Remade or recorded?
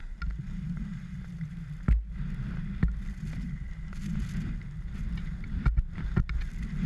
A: recorded